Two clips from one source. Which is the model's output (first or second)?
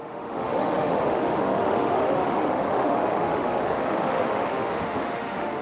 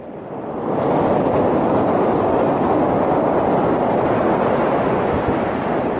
first